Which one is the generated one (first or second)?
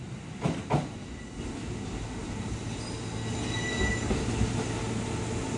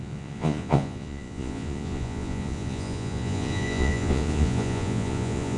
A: second